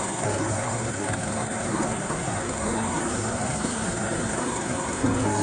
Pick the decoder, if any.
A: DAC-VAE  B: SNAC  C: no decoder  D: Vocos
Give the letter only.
B